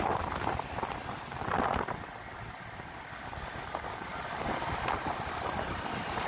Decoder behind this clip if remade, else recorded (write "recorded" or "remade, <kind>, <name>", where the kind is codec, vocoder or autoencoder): recorded